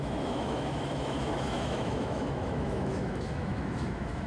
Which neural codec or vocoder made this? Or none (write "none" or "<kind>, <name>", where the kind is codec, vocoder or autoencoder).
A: autoencoder, DAC-VAE